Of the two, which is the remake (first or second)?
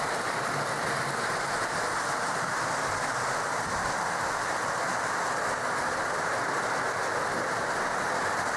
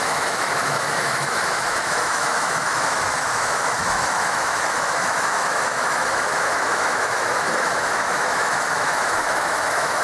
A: second